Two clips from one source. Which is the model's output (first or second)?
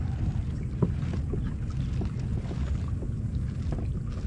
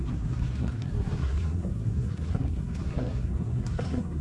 second